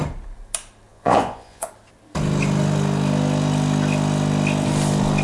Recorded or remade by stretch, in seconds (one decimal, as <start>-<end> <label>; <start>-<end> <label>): 0.0-0.9 recorded; 0.9-1.7 remade; 1.7-5.2 recorded